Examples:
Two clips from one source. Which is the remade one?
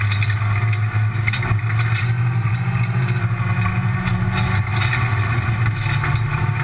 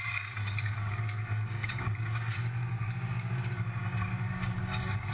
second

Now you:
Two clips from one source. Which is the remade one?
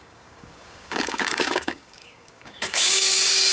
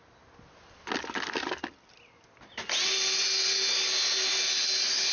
first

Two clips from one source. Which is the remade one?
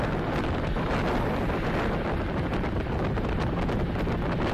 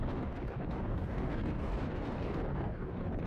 second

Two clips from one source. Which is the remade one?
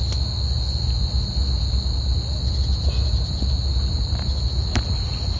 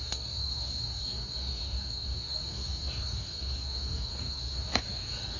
second